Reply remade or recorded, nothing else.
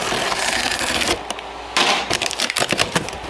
recorded